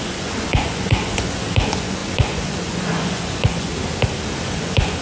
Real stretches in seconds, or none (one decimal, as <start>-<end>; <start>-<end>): 3.7-4.4